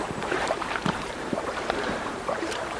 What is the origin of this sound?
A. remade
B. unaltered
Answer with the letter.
A